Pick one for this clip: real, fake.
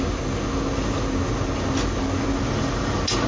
real